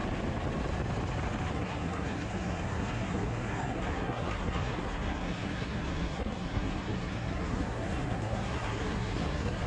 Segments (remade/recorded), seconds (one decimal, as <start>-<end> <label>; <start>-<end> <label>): 0.0-1.5 recorded; 1.5-9.7 remade